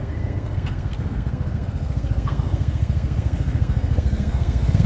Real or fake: fake